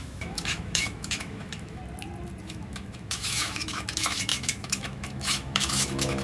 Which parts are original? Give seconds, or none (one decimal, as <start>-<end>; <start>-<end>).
1.8-2.4